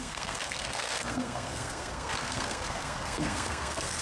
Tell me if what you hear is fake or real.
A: fake